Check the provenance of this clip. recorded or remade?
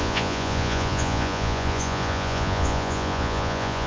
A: remade